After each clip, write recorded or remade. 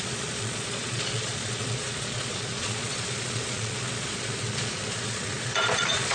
remade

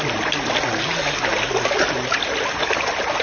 recorded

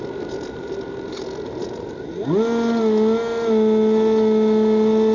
recorded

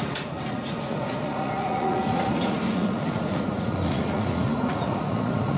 remade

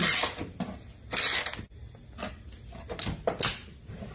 recorded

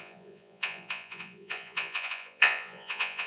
remade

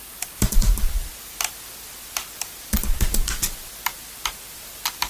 recorded